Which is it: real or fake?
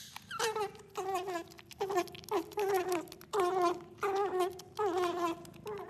real